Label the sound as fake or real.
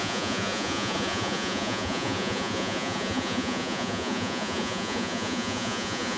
fake